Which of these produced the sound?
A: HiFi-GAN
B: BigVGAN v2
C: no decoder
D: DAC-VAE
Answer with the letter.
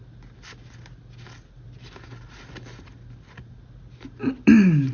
C